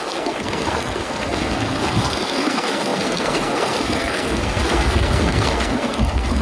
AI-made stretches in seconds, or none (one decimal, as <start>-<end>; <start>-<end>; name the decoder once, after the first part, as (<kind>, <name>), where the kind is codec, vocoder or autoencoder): 0.0-6.4 (codec, SNAC)